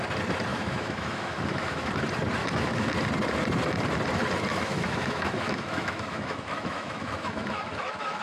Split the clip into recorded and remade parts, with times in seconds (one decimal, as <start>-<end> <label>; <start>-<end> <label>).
0.0-0.5 recorded; 0.5-1.9 remade; 1.9-2.4 recorded; 2.4-2.9 remade; 2.9-4.5 recorded; 4.5-8.2 remade